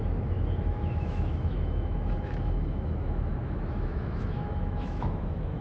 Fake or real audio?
fake